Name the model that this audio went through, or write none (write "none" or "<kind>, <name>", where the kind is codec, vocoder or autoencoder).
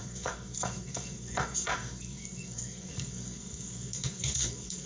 codec, SNAC